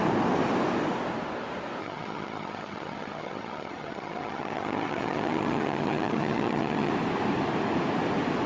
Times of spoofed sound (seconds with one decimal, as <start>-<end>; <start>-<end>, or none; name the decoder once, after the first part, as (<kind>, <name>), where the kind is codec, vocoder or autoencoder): 1.8-6.9 (vocoder, HiFi-GAN)